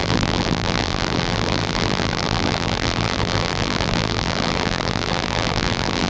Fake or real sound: fake